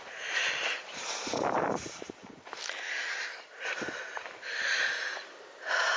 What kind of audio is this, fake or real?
fake